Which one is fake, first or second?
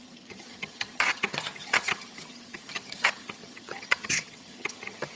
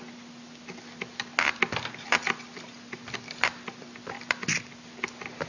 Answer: first